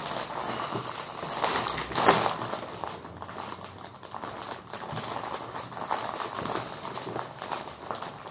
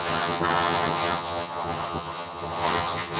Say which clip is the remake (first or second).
second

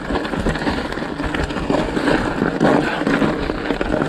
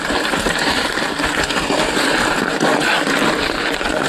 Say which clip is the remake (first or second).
second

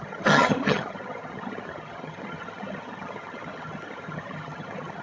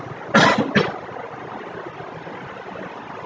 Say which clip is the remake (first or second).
first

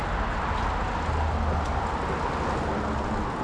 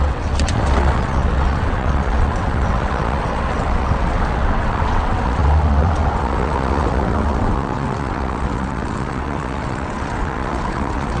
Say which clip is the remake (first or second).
second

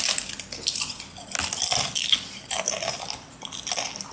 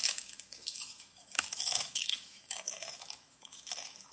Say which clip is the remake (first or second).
second